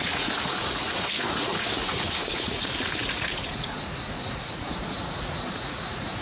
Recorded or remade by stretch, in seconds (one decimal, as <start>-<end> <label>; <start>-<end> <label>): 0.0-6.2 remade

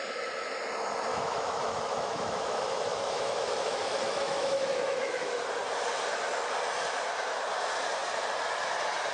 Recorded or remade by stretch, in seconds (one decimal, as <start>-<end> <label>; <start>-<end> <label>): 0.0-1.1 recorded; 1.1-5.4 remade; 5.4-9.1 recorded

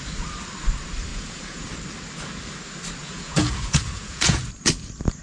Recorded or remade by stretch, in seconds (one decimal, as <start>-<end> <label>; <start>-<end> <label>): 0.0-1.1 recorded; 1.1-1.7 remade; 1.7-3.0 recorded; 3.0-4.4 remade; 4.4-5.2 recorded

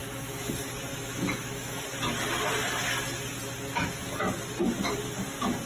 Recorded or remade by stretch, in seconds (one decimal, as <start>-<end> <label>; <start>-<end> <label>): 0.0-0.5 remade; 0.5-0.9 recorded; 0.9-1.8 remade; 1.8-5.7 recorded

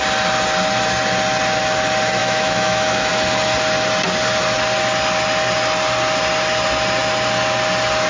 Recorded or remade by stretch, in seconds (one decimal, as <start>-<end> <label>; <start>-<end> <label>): 0.0-2.2 recorded; 2.2-3.1 remade; 3.1-8.1 recorded

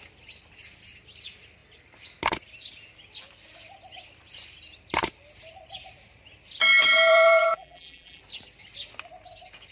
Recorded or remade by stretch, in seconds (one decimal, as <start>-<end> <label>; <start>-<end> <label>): 0.0-6.7 recorded; 6.7-8.2 remade; 8.2-9.7 recorded

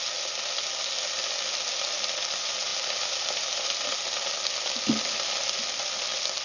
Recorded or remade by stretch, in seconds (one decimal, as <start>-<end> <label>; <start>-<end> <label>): 0.0-6.4 recorded